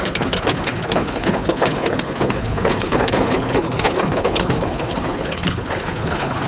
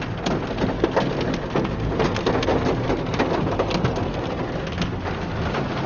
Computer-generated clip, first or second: first